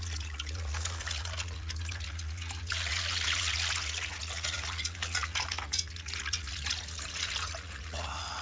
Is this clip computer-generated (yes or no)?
yes